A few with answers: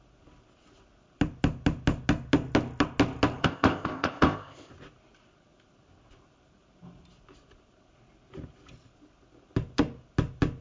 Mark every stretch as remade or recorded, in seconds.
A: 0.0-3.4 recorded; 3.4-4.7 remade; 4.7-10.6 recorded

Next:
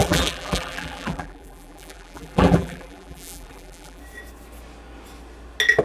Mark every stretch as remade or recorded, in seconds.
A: 0.0-4.0 remade; 4.0-5.8 recorded

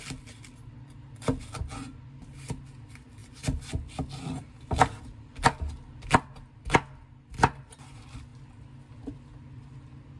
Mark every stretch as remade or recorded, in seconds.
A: 0.0-10.2 recorded